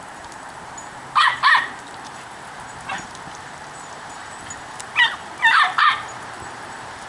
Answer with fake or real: fake